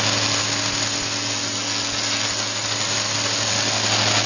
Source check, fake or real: real